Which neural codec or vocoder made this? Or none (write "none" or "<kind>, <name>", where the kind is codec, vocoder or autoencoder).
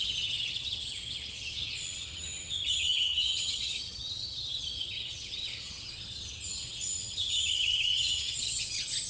vocoder, HiFi-GAN